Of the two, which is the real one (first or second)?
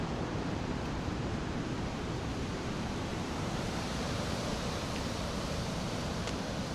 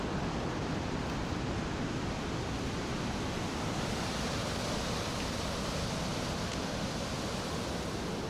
second